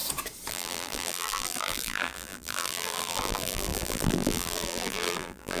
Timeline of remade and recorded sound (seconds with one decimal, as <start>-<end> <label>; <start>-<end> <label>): 0.0-0.5 recorded; 0.5-5.6 remade